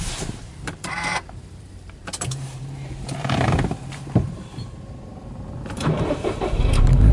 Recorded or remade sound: remade